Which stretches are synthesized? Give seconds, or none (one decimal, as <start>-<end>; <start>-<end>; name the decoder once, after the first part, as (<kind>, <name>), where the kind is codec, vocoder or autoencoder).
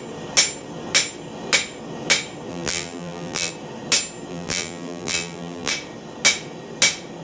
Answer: 2.5-3.5 (vocoder, BigVGAN v2); 4.3-5.7